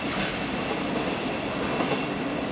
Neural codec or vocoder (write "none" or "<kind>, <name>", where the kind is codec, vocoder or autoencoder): none